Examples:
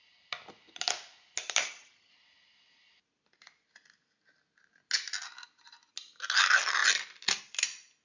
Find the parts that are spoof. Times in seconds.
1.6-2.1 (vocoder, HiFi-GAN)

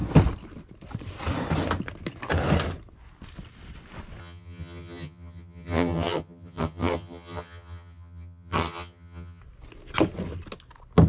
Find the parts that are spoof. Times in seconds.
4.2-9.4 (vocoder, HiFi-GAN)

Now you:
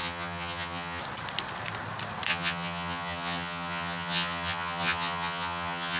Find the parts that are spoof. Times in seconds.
0.0-1.0 (vocoder, HiFi-GAN); 2.3-6.0

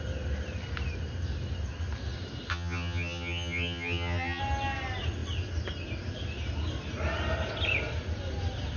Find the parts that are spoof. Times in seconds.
2.5-4.4 (vocoder, HiFi-GAN)